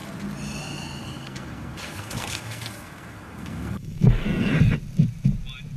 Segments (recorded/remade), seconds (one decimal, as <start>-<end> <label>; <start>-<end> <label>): 0.0-1.0 recorded; 1.0-4.5 remade; 4.5-5.8 recorded